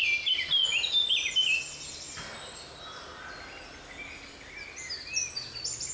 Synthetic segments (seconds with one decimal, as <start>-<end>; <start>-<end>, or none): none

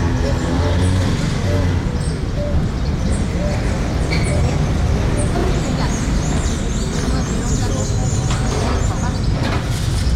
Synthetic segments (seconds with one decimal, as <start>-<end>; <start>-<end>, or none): 5.4-6.6

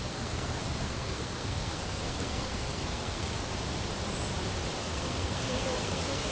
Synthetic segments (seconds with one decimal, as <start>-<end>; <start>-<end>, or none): 0.0-3.5; 4.8-6.3